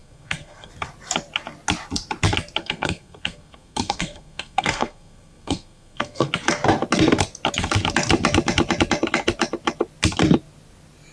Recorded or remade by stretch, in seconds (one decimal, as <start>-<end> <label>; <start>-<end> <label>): 0.0-0.7 remade; 0.7-2.6 recorded; 2.6-6.3 remade; 6.3-11.1 recorded